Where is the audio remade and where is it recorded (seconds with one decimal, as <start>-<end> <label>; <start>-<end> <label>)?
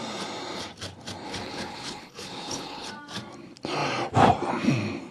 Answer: 0.0-1.3 recorded; 1.3-2.9 remade; 2.9-5.1 recorded